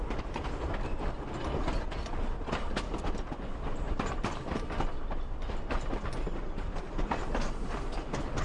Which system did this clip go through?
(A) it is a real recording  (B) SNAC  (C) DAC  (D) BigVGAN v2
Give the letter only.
A